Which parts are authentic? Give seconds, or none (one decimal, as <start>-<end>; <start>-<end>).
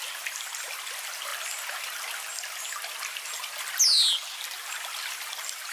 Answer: 0.0-5.7